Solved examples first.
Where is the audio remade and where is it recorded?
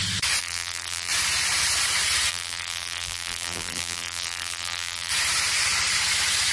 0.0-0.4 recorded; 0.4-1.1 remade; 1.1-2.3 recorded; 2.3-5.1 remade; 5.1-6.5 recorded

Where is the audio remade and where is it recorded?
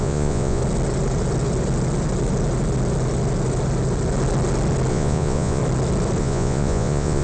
0.0-0.6 remade; 0.6-4.9 recorded; 4.9-5.6 remade; 5.6-6.2 recorded; 6.2-7.2 remade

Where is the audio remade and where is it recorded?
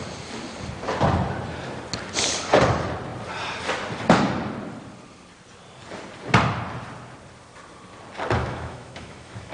0.0-8.4 recorded; 8.4-9.5 remade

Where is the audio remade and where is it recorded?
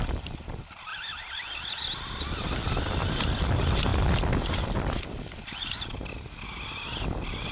0.0-7.5 recorded